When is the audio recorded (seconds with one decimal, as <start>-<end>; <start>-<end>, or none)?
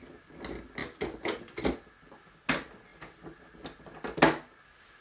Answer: 0.0-5.0